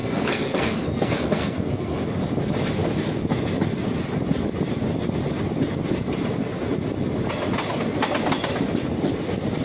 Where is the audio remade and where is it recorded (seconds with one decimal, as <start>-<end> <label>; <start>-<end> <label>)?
0.0-2.0 remade; 2.0-9.6 recorded